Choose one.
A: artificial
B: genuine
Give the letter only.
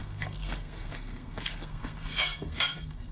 A